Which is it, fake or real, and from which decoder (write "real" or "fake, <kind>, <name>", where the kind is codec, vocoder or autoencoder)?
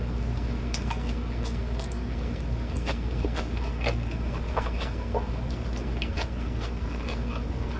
fake, codec, SNAC